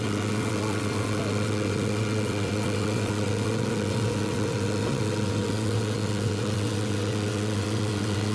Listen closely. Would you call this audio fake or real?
fake